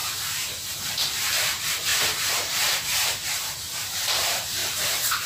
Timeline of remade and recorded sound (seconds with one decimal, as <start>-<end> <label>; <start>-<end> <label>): 0.0-5.3 remade